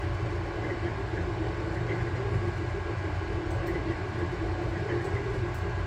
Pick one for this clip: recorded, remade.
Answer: recorded